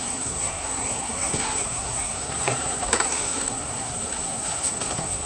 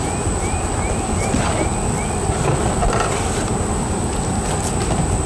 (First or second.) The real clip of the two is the second